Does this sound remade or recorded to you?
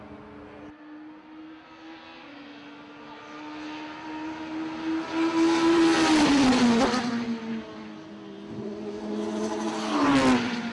recorded